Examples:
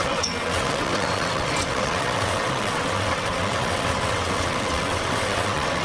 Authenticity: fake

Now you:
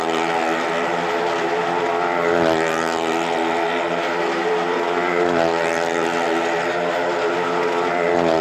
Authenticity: real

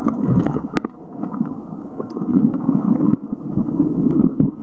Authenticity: fake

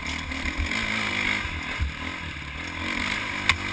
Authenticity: real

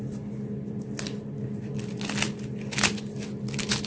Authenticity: real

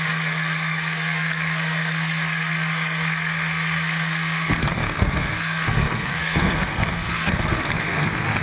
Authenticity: fake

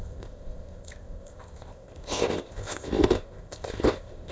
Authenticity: fake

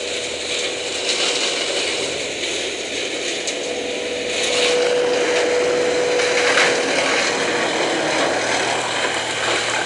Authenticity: real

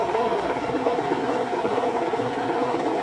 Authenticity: fake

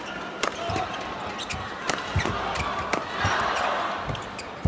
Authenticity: real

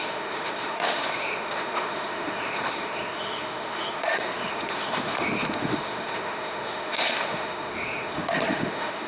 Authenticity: fake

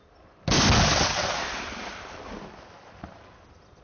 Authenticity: real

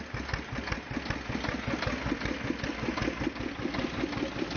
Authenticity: real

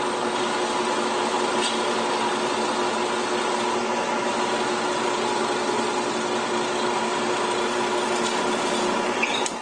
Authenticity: real